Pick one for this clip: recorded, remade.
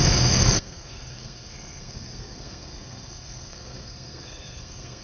remade